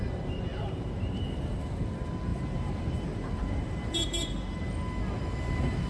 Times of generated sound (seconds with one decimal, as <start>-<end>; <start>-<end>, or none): 0.5-1.8; 2.3-4.6